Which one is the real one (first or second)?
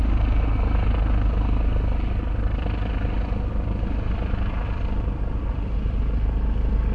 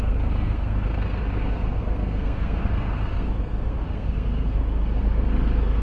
first